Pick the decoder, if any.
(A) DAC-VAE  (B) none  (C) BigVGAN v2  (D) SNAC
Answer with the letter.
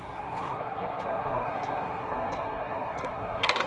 D